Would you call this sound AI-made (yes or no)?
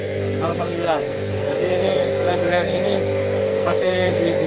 yes